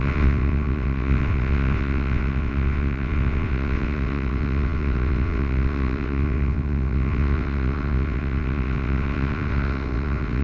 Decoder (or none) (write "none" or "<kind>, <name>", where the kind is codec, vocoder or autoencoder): vocoder, WaveNeXt